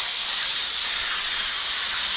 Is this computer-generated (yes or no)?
yes